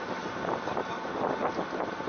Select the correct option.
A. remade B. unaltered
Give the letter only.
B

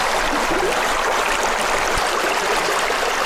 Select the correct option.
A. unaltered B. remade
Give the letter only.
A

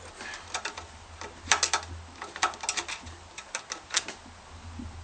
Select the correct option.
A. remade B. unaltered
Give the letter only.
B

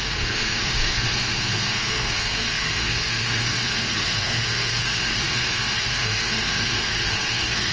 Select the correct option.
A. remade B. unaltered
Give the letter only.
A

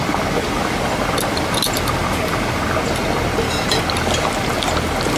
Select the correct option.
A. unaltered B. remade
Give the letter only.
A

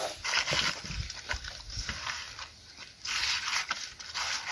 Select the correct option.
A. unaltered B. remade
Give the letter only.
A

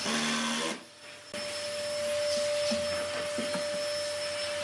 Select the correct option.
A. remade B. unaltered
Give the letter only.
B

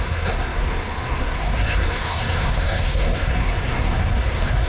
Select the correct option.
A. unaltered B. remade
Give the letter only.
B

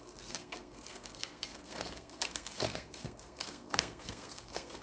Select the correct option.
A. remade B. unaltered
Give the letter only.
A